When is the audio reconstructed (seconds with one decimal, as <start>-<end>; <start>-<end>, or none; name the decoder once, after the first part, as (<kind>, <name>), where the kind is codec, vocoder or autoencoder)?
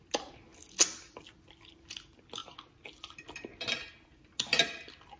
none